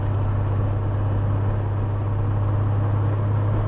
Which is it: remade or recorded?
recorded